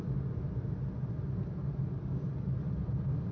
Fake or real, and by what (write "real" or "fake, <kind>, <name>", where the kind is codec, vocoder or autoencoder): real